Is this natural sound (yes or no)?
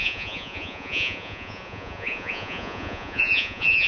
no